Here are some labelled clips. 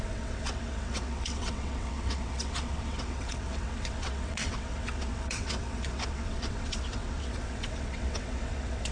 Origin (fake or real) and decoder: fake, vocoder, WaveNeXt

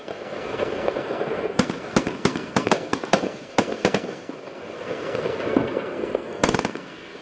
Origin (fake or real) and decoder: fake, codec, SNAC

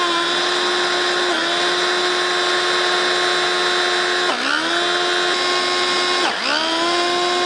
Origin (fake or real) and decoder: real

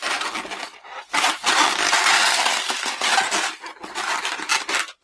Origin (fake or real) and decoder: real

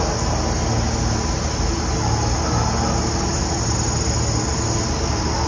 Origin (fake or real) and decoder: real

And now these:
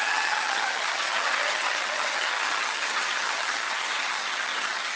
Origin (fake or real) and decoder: fake, vocoder, HiFi-GAN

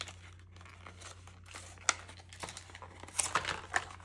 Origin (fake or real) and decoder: real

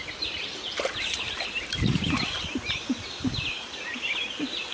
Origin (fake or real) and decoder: real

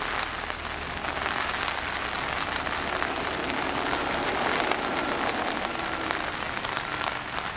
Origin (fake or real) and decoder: real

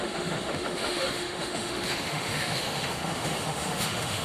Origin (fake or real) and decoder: fake, autoencoder, DAC-VAE